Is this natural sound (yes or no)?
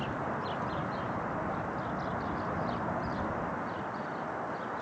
yes